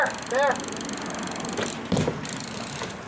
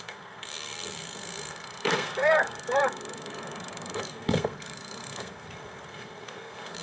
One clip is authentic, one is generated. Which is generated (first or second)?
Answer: second